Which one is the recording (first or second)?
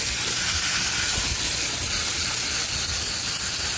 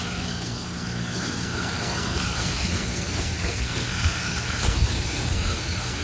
first